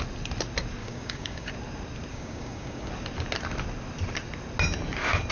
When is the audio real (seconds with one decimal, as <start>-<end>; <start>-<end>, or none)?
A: 0.0-0.8; 1.5-2.1; 2.9-5.3